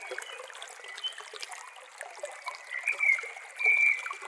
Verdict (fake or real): real